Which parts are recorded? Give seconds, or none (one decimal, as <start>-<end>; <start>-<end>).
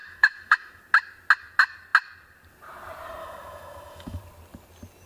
0.8-3.2; 4.2-5.1